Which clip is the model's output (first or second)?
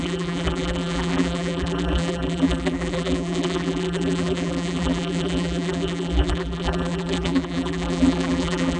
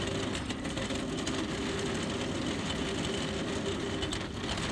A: first